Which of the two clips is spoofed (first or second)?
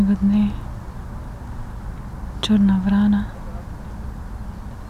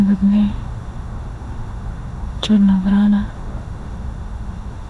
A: second